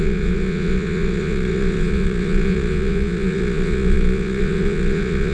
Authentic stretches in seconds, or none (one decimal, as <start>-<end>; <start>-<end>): none